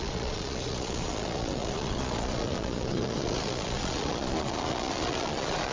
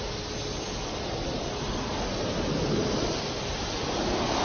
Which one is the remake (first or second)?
first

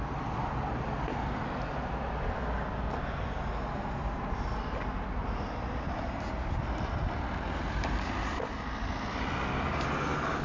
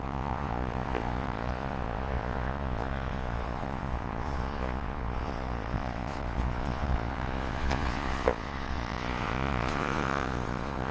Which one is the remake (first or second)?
second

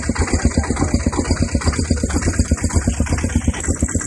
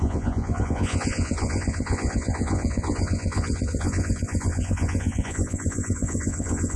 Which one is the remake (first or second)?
second